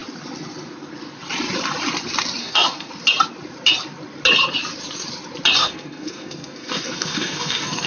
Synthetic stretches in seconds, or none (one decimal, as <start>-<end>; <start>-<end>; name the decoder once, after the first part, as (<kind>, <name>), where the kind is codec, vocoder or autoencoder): 2.4-2.9 (codec, SNAC); 5.6-7.9